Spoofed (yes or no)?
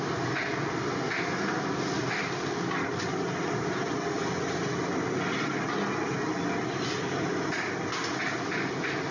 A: no